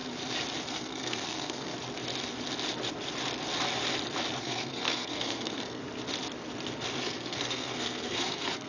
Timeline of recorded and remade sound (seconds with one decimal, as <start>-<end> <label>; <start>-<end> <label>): 0.0-0.7 recorded; 0.7-1.7 remade; 1.7-4.4 recorded; 4.4-5.8 remade; 5.8-7.0 recorded; 7.0-8.7 remade